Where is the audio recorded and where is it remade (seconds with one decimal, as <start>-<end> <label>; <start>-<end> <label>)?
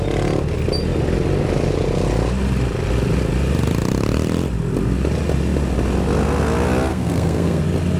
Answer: 0.0-6.9 recorded; 6.9-7.6 remade; 7.6-8.0 recorded